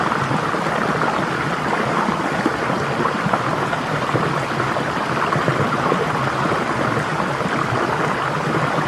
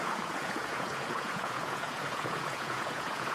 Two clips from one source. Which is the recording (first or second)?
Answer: first